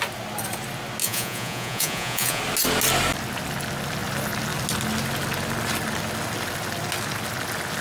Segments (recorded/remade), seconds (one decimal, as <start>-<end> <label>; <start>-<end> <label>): 0.0-1.0 recorded; 1.0-2.4 remade; 2.4-7.8 recorded